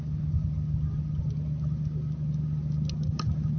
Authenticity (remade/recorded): recorded